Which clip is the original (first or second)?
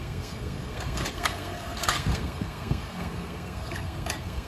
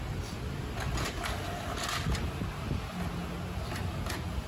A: second